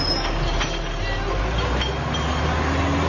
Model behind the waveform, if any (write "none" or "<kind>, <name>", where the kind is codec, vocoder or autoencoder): none